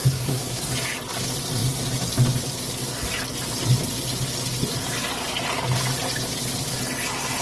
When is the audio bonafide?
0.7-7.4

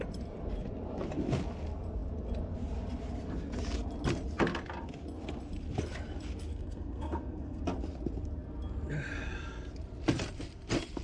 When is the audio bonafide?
0.0-6.5; 7.6-11.0

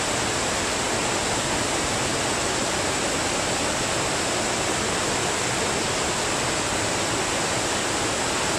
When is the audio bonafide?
0.0-8.6

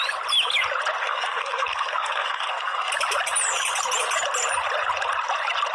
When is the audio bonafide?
0.0-1.0; 2.9-5.7

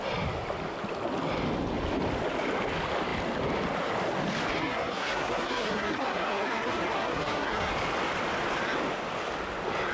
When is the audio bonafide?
0.0-4.6; 7.7-9.9

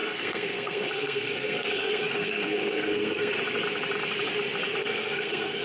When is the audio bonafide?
3.3-4.8

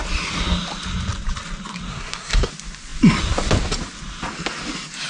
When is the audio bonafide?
0.0-1.9; 2.5-5.1

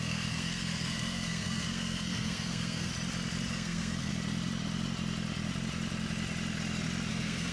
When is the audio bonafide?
2.9-3.5; 4.1-7.1